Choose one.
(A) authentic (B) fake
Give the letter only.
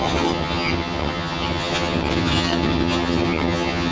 B